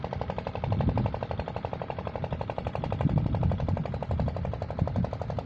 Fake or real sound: real